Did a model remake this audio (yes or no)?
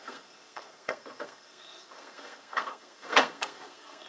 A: yes